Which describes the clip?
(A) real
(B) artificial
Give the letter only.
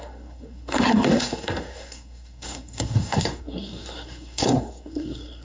B